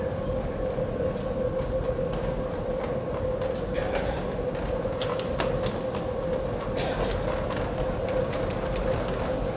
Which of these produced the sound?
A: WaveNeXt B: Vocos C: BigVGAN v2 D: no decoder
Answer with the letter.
D